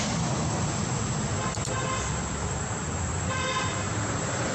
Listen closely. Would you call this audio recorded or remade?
remade